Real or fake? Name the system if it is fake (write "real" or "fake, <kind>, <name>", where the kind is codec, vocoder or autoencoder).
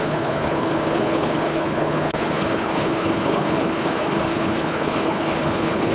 fake, codec, HILCodec